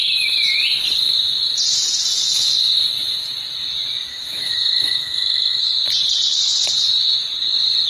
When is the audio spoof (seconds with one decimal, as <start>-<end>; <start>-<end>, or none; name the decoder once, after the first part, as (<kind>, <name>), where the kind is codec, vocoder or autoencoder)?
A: 4.1-5.6 (autoencoder, DAC-VAE)